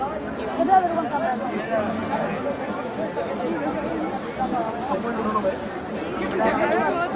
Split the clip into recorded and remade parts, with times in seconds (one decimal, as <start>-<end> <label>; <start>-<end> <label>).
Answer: 0.0-7.2 recorded